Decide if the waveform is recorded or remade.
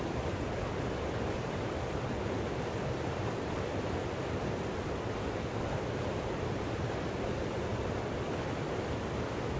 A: recorded